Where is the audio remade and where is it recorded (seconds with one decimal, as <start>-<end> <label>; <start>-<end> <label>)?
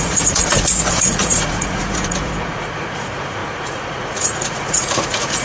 0.0-5.4 remade